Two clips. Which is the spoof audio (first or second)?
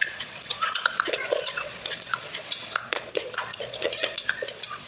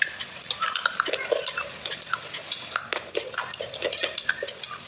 first